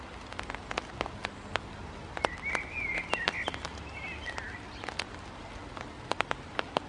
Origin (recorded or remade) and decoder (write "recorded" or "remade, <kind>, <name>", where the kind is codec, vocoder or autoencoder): recorded